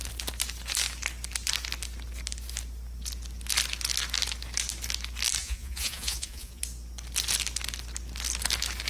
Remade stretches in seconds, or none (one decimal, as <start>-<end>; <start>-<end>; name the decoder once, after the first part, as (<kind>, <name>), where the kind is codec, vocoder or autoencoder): 5.4-6.6 (vocoder, Vocos)